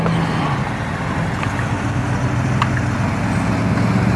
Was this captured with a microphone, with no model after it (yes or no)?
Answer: yes